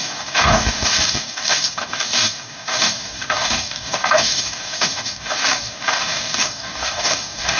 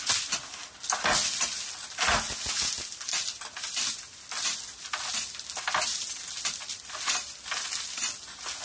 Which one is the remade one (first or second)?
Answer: first